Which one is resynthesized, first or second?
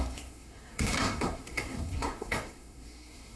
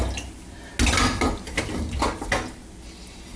first